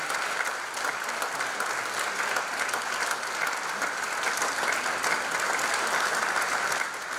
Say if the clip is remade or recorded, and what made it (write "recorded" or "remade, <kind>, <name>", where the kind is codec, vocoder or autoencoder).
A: recorded